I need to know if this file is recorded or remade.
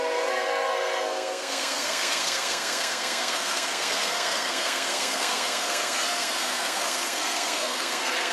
remade